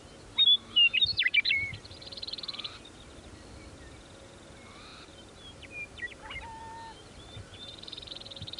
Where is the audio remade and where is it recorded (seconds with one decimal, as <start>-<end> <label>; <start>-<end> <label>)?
0.0-4.9 recorded; 4.9-6.6 remade; 6.6-7.0 recorded; 7.0-8.1 remade; 8.1-8.6 recorded